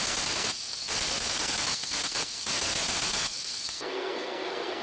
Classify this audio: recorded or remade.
remade